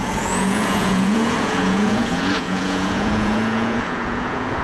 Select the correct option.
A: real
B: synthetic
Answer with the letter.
B